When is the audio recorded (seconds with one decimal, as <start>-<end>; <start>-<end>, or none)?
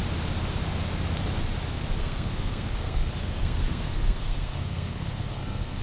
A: 0.0-2.0